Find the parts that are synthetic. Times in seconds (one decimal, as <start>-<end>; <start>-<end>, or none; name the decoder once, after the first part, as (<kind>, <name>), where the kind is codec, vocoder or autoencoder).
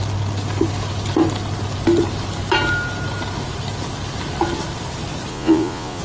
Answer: 5.3-6.0 (vocoder, Vocos)